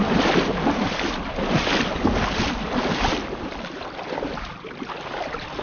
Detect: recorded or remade recorded